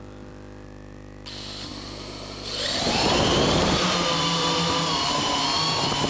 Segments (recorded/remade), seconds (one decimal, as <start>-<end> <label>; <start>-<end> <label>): 0.0-1.7 recorded; 1.7-5.4 remade; 5.4-6.1 recorded